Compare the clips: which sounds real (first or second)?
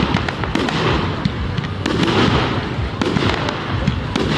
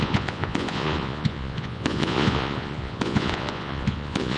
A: first